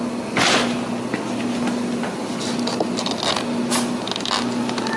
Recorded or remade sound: recorded